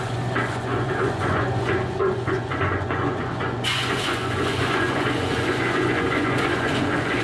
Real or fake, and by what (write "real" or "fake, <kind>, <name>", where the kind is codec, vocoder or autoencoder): fake, vocoder, Vocos